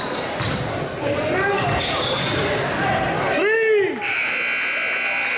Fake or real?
real